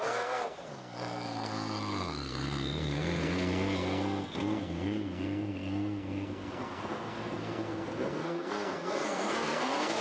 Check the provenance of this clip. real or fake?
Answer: fake